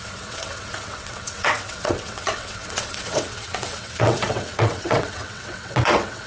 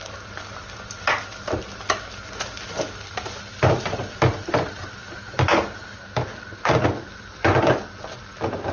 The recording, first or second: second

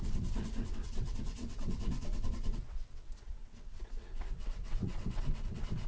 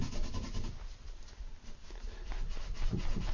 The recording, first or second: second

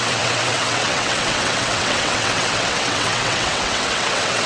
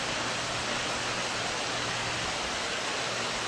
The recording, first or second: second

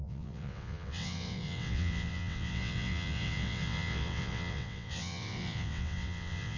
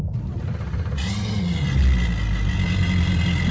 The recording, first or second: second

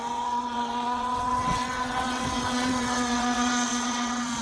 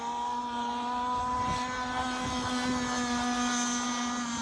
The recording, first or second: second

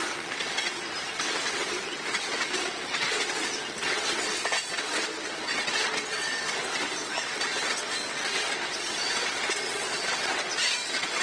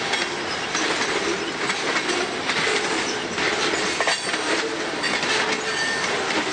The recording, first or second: second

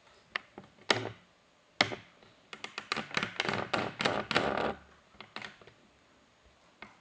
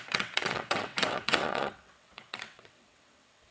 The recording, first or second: first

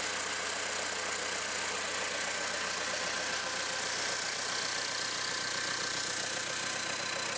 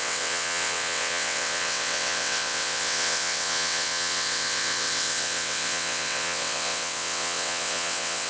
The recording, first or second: first